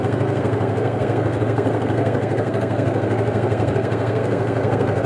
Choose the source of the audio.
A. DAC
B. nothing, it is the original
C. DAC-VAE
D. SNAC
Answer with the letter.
D